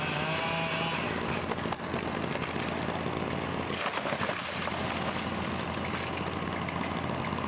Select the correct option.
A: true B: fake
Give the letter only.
A